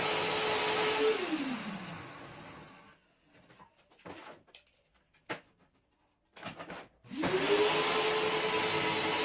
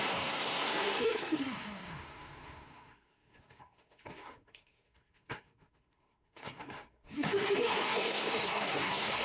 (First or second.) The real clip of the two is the first